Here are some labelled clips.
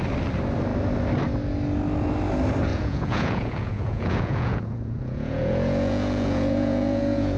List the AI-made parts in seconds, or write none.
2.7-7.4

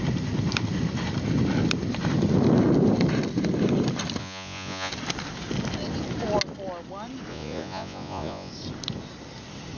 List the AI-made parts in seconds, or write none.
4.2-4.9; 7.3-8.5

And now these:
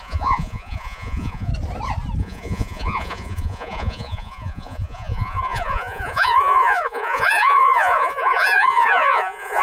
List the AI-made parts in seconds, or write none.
0.0-1.5; 2.2-9.6

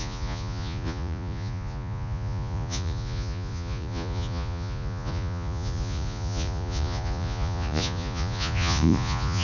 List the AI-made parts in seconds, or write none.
0.0-9.4

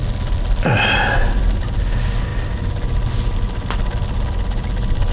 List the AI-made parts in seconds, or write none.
none